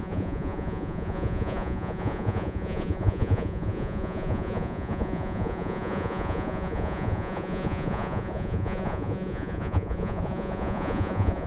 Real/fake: fake